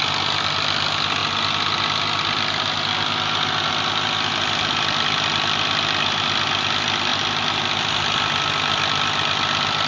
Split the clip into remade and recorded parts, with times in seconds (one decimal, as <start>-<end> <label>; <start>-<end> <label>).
0.0-9.9 recorded